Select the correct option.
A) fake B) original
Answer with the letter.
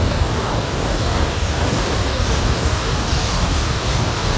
A